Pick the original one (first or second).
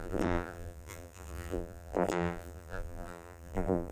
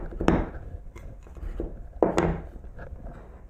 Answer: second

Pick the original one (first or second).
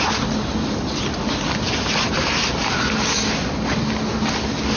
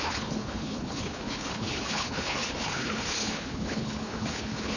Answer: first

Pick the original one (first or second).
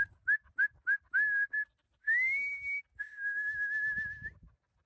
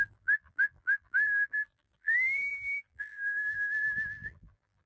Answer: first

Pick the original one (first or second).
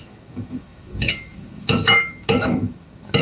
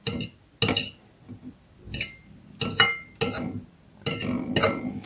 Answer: second